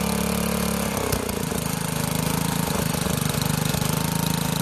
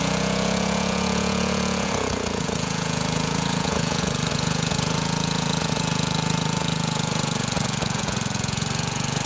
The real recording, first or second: first